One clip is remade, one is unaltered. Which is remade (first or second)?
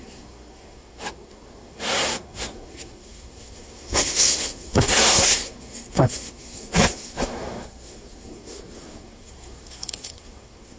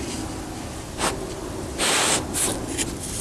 first